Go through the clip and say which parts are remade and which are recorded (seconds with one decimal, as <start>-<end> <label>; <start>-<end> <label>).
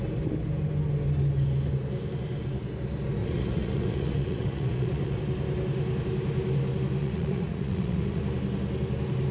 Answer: 0.0-3.2 recorded; 3.2-5.2 remade; 5.2-7.0 recorded; 7.0-8.2 remade; 8.2-9.3 recorded